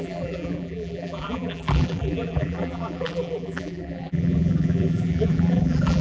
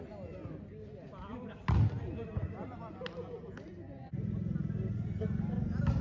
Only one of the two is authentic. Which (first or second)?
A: second